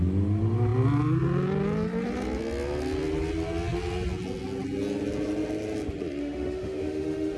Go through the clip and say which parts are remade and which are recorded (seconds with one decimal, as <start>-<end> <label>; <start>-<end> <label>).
0.0-6.2 recorded; 6.2-7.4 remade